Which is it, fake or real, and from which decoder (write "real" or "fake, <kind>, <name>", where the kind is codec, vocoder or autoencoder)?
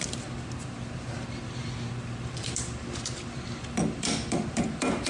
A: real